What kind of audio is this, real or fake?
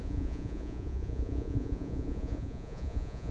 fake